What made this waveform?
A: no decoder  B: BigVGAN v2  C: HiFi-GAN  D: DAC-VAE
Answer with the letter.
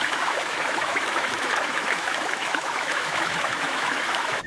D